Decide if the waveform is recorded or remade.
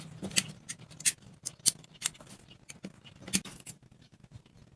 recorded